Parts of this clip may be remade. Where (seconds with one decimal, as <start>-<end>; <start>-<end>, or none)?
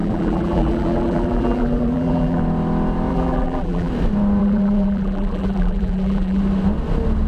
0.0-2.4; 3.1-3.9; 4.4-6.4